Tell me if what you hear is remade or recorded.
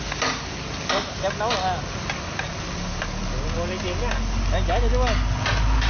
recorded